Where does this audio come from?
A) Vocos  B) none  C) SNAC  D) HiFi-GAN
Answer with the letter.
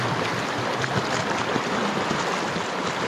B